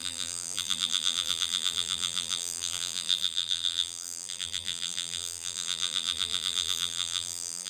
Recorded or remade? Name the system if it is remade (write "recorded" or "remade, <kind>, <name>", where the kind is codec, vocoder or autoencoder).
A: remade, vocoder, BigVGAN v2